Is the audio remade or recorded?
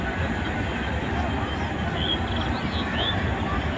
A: recorded